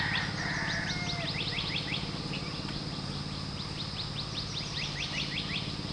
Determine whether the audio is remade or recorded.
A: recorded